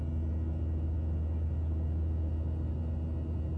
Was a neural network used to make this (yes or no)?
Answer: no